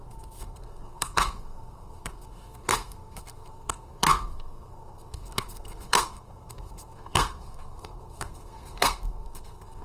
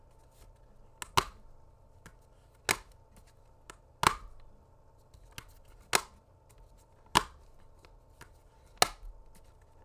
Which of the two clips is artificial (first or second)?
first